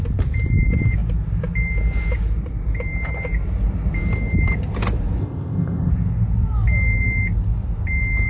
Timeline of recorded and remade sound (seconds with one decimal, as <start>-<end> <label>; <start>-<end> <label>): 0.0-5.2 recorded; 5.2-5.9 remade; 5.9-8.3 recorded